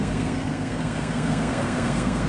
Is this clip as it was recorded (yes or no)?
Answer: no